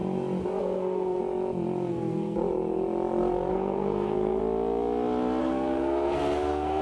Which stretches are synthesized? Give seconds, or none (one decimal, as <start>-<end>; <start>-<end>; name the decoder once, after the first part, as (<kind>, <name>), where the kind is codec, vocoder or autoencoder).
0.6-1.2 (codec, SNAC); 1.9-2.4; 3.5-4.4; 5.4-6.8